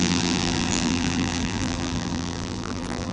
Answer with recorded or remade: remade